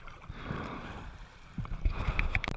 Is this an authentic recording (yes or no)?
no